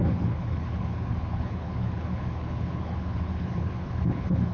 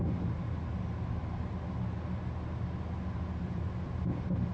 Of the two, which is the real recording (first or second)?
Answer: second